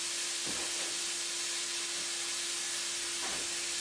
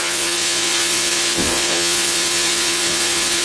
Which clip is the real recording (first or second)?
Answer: first